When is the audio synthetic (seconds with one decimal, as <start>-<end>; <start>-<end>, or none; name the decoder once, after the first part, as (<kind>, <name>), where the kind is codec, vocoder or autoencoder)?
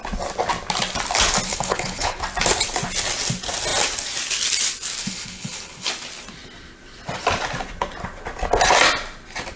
1.5-2.2 (codec, HILCodec); 5.0-5.9